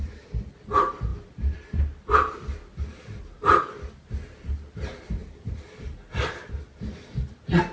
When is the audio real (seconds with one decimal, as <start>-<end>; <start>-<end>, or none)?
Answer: 0.0-1.1; 3.9-5.2; 6.5-7.7